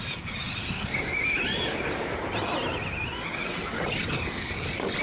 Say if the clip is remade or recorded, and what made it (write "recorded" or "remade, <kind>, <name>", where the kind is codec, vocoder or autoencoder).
recorded